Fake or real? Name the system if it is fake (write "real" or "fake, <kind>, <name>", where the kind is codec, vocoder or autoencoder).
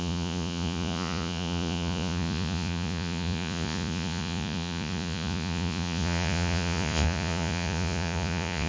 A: fake, vocoder, Vocos